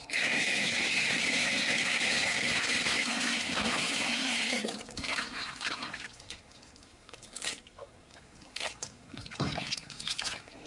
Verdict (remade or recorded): remade